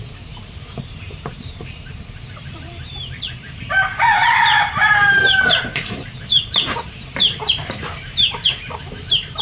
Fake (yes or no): yes